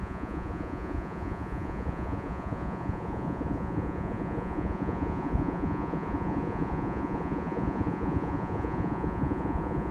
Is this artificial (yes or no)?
yes